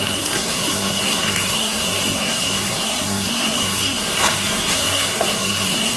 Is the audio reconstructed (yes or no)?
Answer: yes